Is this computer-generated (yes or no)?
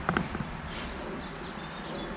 no